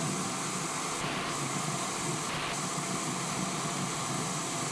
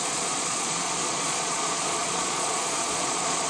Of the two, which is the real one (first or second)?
first